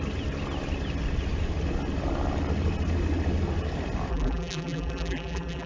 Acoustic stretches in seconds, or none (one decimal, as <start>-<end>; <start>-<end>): 0.0-4.1